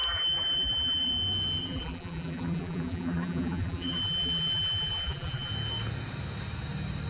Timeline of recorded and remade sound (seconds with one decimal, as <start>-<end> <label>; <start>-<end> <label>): 0.0-1.1 remade; 1.1-1.6 recorded; 1.6-5.5 remade; 5.5-7.1 recorded